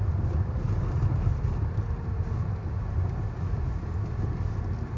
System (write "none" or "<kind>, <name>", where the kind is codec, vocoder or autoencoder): none